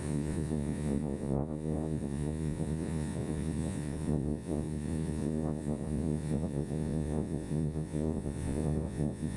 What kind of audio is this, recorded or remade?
remade